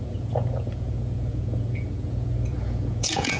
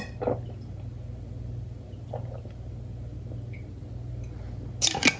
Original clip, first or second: second